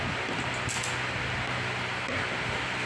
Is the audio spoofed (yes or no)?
no